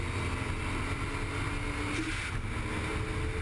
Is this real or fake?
real